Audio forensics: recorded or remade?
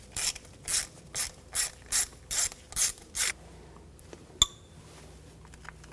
recorded